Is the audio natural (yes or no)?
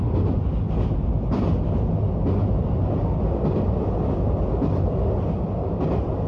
yes